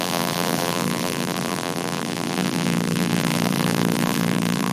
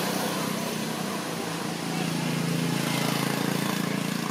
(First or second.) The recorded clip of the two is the second